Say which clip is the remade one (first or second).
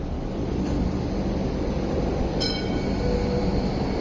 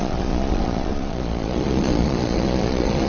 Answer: second